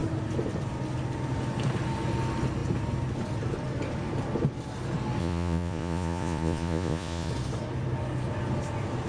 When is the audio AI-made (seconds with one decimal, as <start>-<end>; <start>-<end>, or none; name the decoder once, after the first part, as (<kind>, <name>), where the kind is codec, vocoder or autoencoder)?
5.2-7.3 (vocoder, Vocos)